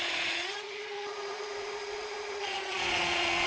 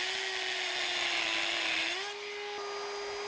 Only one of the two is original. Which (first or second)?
second